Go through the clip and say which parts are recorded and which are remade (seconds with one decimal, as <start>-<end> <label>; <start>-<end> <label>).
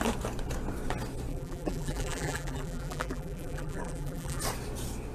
0.0-1.3 recorded; 1.3-4.4 remade; 4.4-5.1 recorded